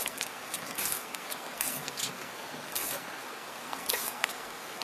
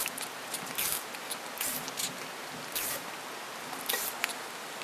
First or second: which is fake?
first